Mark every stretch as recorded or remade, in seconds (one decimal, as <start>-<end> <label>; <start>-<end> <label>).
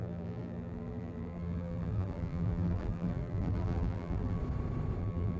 0.0-4.4 remade; 4.4-5.0 recorded; 5.0-5.4 remade